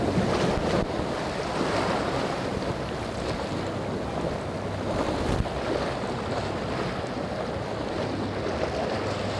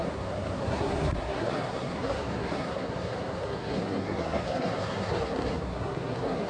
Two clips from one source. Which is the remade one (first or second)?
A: second